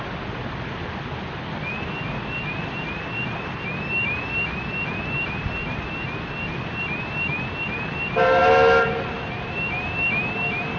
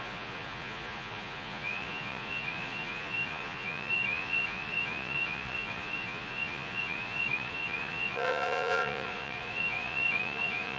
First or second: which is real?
first